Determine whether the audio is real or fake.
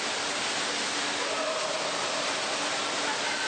real